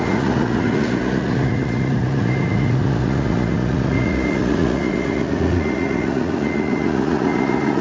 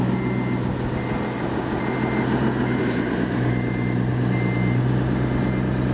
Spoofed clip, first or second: first